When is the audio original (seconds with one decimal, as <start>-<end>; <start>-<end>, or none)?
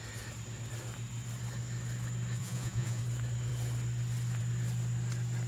0.0-2.4; 3.0-5.5